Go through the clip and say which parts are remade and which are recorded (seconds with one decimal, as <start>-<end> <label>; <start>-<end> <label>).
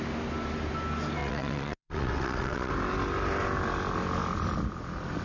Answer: 0.0-1.2 recorded; 1.2-2.7 remade; 2.7-5.2 recorded